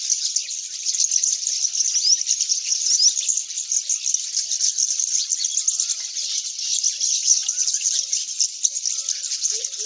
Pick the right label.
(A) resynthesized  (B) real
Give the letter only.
B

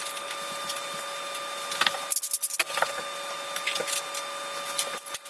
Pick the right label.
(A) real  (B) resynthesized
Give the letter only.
A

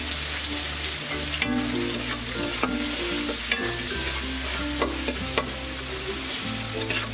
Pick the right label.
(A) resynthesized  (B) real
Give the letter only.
B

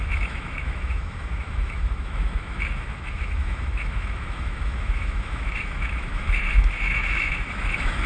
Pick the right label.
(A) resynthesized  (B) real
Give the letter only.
A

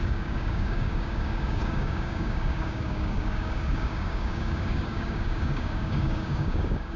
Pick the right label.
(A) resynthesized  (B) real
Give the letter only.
A